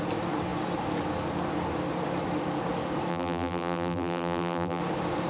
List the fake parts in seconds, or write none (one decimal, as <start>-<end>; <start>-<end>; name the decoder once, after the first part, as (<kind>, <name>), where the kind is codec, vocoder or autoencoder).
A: 3.1-4.8 (vocoder, BigVGAN v2)